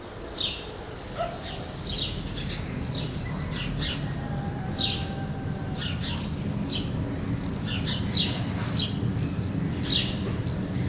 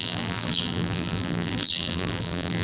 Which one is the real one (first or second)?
first